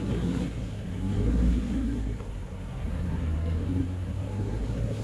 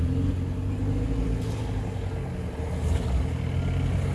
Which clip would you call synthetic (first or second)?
first